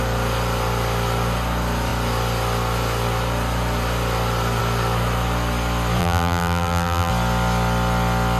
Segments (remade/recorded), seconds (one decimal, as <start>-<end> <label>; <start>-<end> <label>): 0.0-6.0 recorded; 6.0-7.1 remade; 7.1-8.4 recorded